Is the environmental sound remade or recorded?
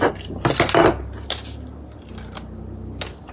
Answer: recorded